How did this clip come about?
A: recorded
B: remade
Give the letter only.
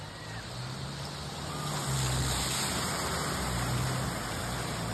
A